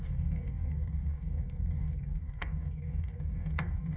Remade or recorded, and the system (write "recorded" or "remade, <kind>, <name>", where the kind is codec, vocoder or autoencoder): remade, codec, DAC